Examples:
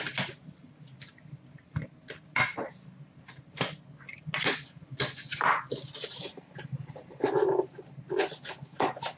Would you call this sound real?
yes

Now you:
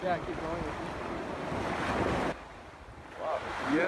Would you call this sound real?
yes